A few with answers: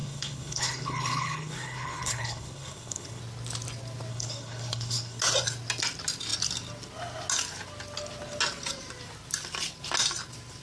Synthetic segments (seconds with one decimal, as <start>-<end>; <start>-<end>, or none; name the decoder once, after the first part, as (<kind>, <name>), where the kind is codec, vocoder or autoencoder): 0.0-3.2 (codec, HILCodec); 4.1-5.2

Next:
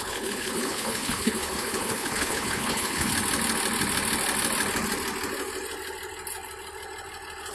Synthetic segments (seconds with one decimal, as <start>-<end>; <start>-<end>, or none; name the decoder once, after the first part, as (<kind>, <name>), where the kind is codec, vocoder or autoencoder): 0.0-3.1 (codec, HILCodec)

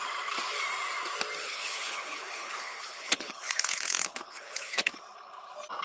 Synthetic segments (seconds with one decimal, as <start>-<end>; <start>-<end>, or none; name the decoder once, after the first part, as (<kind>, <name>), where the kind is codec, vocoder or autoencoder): 1.4-4.9 (codec, HILCodec)

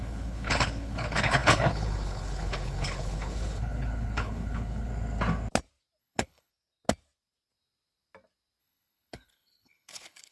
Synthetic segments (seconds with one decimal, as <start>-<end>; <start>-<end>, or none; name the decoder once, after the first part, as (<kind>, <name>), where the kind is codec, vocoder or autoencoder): 0.0-4.9 (codec, HILCodec); 6.0-6.5; 8.6-10.3

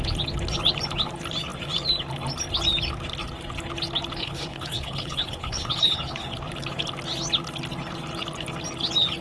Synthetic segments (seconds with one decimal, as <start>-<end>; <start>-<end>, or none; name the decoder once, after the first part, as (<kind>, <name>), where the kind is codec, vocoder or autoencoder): 4.2-6.3 (codec, HILCodec)

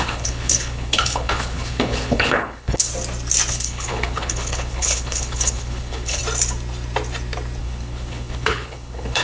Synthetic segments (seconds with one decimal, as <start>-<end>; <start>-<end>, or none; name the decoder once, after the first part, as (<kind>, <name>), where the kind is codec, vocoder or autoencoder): 0.0-2.9 (codec, HILCodec); 3.5-6.2; 7.6-9.2

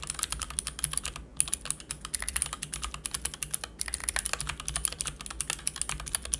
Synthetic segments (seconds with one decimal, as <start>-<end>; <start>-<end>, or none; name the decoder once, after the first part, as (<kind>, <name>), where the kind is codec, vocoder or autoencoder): none